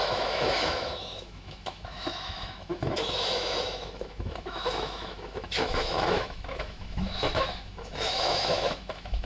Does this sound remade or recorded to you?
remade